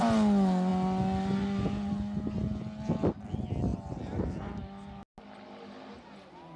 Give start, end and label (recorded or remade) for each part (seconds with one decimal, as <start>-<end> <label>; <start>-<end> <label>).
0.0-3.7 recorded; 3.7-4.6 remade; 4.6-6.6 recorded